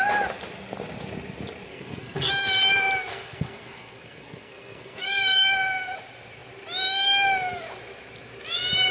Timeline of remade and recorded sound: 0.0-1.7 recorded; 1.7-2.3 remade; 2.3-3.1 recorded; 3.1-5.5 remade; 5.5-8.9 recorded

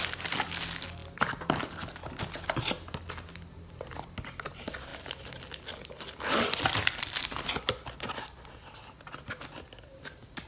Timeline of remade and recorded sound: 0.0-10.5 recorded

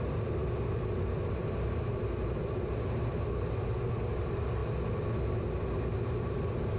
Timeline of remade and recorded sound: 0.0-6.8 recorded